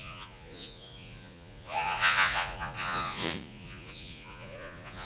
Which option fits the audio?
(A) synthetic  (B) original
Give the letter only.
A